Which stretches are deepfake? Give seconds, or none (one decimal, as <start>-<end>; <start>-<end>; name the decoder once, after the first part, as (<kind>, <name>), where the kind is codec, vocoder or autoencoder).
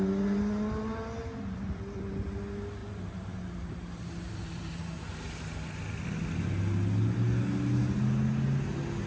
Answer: 2.8-5.1 (vocoder, BigVGAN v2)